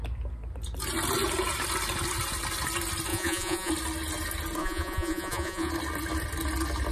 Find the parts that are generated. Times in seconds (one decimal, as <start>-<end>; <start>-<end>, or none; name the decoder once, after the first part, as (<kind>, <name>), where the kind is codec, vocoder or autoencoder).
3.1-3.7 (vocoder, Vocos); 4.6-5.7